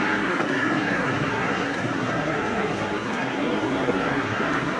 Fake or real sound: fake